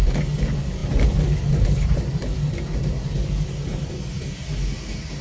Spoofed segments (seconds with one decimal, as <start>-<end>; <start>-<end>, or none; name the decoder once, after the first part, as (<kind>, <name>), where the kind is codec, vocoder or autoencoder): none

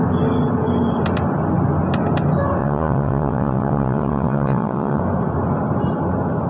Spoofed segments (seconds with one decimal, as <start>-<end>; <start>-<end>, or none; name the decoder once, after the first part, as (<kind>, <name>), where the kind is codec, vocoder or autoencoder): 2.6-5.0 (vocoder, WaveNeXt)

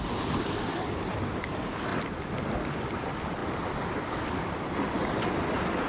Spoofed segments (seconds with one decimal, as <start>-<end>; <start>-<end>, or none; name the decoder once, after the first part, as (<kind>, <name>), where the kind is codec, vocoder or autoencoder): none